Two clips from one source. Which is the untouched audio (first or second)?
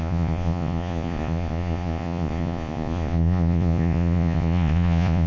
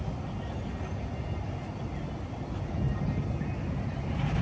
second